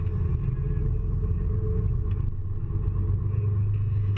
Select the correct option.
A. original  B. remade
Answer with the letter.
A